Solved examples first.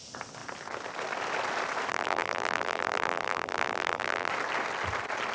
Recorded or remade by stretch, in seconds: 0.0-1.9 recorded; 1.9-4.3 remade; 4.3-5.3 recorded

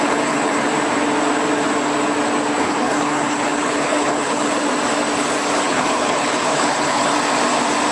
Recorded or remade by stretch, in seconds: 0.0-0.7 remade; 0.7-2.6 recorded; 2.6-4.6 remade; 4.6-5.5 recorded; 5.5-7.1 remade; 7.1-7.9 recorded